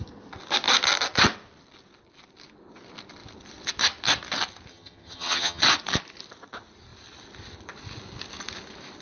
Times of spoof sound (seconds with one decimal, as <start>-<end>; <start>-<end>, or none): 4.7-5.6